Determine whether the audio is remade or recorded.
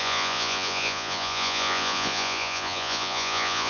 remade